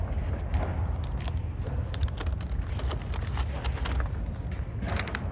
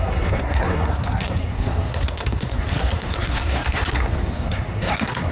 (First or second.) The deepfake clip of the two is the second